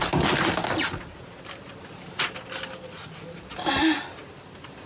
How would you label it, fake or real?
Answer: real